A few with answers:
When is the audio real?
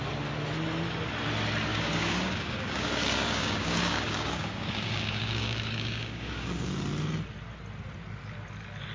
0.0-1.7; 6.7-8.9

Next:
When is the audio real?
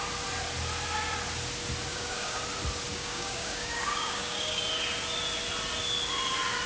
0.0-1.9; 2.4-2.9; 4.6-6.7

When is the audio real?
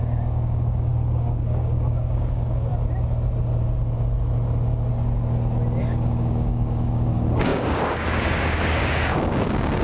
2.7-5.8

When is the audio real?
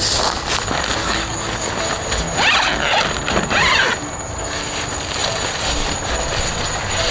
0.0-1.0; 1.7-7.1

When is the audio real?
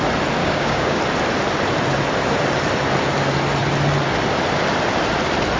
0.0-0.4; 1.0-5.6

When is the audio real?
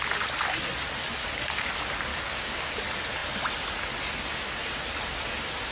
0.0-1.2; 1.7-2.1; 2.8-5.7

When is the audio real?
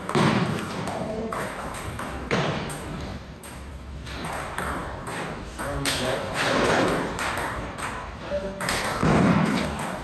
none